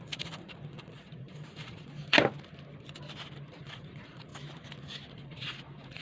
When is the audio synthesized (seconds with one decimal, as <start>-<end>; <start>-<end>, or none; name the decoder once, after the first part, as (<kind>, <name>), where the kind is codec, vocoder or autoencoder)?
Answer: 0.0-2.0 (vocoder, Vocos); 3.6-4.3; 5.1-6.0